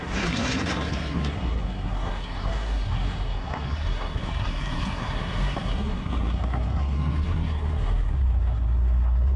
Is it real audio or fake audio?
fake